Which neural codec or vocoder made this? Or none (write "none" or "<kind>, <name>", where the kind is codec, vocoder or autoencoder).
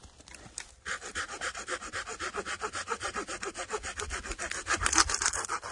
none